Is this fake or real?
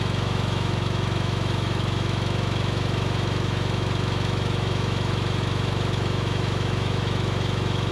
fake